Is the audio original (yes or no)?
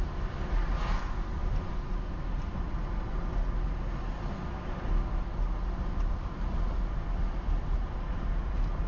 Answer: yes